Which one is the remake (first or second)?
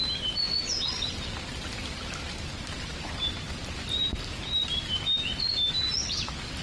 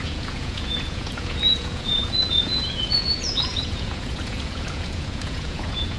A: second